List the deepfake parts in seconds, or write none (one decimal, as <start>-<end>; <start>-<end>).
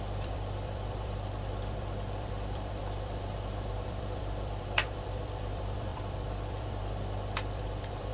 0.0-8.1